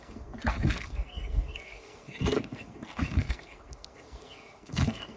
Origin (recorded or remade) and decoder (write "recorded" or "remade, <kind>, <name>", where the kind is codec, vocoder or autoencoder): remade, codec, SNAC